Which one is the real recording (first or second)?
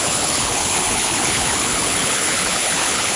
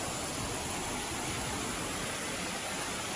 second